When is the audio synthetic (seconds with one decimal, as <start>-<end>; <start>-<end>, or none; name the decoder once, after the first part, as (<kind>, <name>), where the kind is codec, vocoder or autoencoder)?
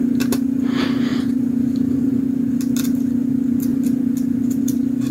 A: 1.1-2.1 (vocoder, BigVGAN v2); 3.7-4.6